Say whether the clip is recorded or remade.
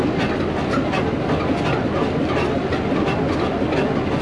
recorded